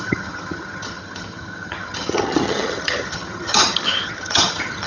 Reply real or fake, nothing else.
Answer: fake